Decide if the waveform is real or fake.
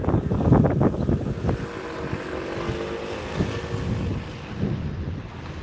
real